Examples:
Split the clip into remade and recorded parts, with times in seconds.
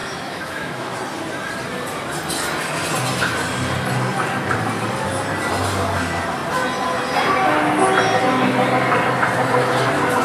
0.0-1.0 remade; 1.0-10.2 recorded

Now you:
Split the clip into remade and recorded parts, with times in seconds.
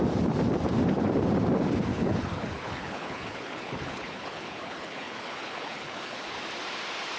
0.0-1.9 recorded; 1.9-6.2 remade; 6.2-7.2 recorded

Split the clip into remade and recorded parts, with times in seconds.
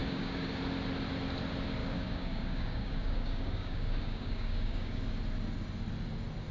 0.0-0.6 remade; 0.6-1.8 recorded; 1.8-5.0 remade; 5.0-6.5 recorded